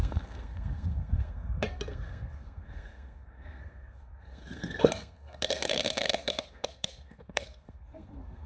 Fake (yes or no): yes